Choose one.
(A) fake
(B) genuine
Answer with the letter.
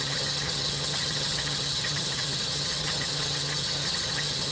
A